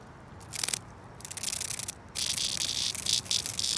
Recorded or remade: recorded